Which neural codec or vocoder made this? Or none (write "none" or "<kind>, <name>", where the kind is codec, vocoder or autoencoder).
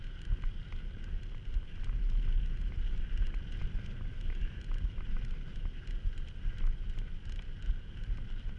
none